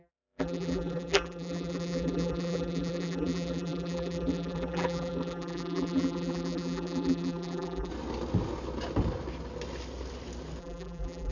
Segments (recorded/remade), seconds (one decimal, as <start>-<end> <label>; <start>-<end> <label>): 0.0-7.9 remade; 7.9-10.6 recorded; 10.6-11.3 remade